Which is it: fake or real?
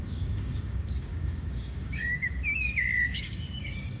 fake